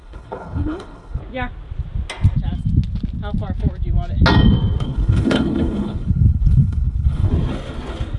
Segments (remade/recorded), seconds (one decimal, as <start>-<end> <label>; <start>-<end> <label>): 0.0-1.2 remade; 1.2-4.8 recorded; 4.8-7.3 remade; 7.3-8.2 recorded